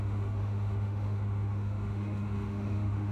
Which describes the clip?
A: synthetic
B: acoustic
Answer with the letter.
A